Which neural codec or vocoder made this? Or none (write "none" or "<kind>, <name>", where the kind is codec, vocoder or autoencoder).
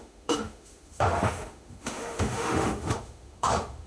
autoencoder, DAC-VAE